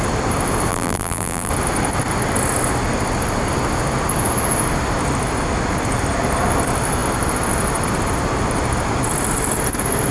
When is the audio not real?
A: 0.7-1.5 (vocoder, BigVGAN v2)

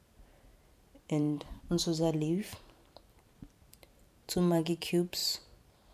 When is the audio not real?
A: 0.0-5.9 (vocoder, BigVGAN v2)

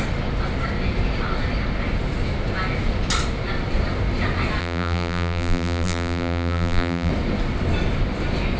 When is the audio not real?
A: 4.6-7.1 (vocoder, BigVGAN v2)

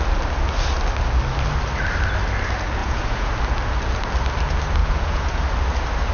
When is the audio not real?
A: 2.8-3.3 (vocoder, Vocos); 4.8-5.4